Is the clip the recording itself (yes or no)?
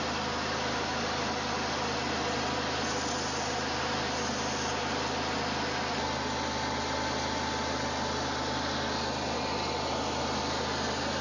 yes